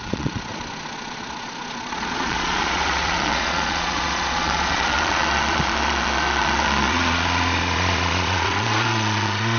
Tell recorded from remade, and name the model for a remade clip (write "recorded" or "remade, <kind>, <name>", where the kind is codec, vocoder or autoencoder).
remade, vocoder, Vocos